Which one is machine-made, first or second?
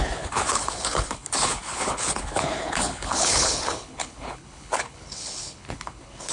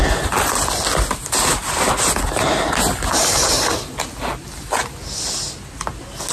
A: first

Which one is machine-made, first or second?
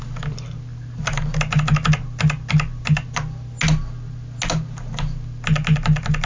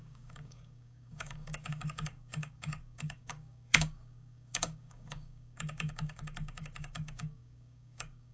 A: second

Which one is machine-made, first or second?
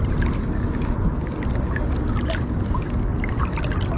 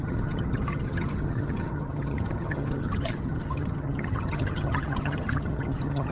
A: second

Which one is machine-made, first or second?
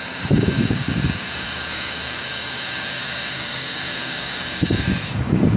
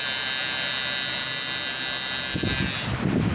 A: first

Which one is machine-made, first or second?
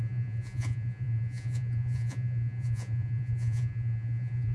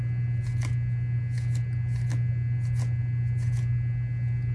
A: first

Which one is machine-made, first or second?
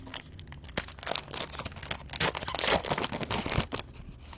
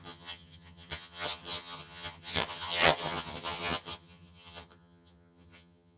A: second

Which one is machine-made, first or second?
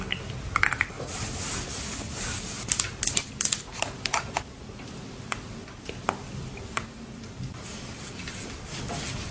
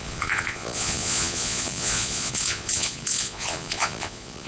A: second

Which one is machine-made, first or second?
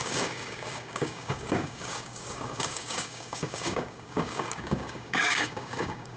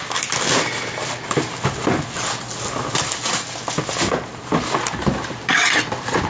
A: first